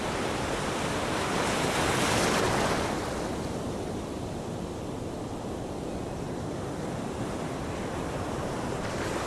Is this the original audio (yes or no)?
no